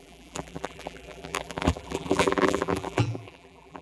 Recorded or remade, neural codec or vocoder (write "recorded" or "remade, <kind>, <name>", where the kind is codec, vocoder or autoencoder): remade, vocoder, BigVGAN v2